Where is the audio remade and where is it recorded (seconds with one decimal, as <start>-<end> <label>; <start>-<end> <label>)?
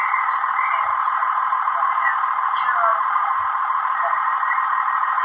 0.0-2.9 recorded; 2.9-4.0 remade; 4.0-5.2 recorded